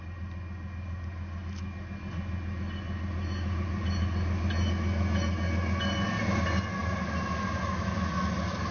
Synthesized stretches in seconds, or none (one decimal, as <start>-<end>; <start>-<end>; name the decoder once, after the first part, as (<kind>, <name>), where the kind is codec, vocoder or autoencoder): none